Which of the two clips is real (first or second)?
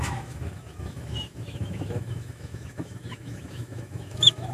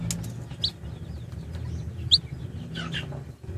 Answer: second